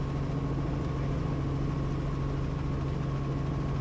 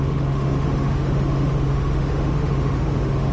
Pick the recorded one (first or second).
first